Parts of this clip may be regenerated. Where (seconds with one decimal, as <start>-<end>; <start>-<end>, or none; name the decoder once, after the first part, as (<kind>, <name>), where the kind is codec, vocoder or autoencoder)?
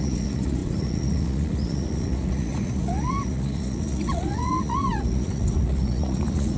0.0-6.6 (vocoder, Vocos)